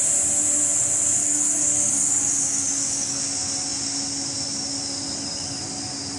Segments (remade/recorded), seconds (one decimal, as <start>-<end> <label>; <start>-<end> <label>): 0.0-1.2 recorded; 1.2-3.2 remade; 3.2-6.2 recorded